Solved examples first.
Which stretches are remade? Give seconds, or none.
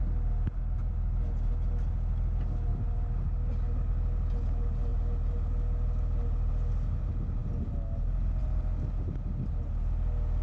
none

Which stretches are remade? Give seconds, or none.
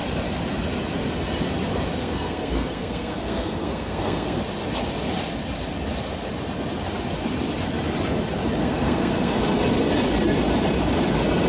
2.0-4.4 (codec, SNAC); 8.6-9.4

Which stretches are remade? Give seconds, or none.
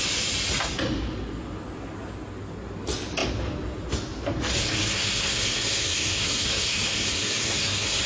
4.6-8.1 (codec, SNAC)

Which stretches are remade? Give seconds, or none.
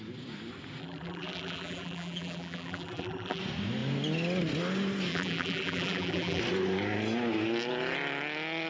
0.8-3.4 (vocoder, BigVGAN v2); 5.1-6.4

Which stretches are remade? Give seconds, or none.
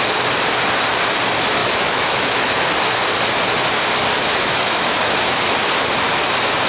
1.6-2.6 (autoencoder, DAC-VAE); 4.3-5.1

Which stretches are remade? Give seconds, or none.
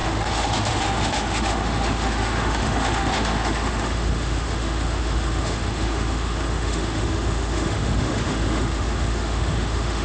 0.0-10.0 (autoencoder, DAC-VAE)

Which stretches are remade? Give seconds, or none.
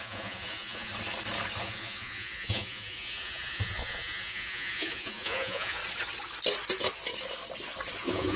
0.0-0.9 (vocoder, Vocos); 1.6-5.8; 8.0-8.4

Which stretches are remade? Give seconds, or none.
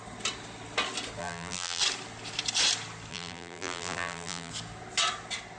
1.2-1.8 (vocoder, BigVGAN v2); 3.1-4.5